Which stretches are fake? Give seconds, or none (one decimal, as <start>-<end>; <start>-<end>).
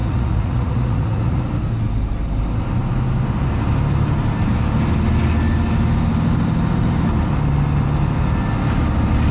0.0-1.4